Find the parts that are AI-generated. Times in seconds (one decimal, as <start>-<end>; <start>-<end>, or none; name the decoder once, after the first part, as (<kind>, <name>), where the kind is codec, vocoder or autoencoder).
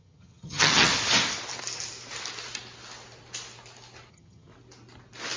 0.0-0.9 (vocoder, HiFi-GAN); 4.1-4.5